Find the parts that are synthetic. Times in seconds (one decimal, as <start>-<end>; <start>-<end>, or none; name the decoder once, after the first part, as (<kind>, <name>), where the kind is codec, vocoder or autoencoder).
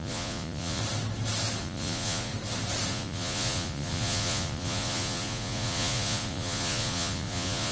0.0-0.8 (vocoder, Vocos); 1.6-2.3; 2.9-7.7